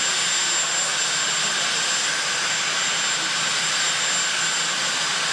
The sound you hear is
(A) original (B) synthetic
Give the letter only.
A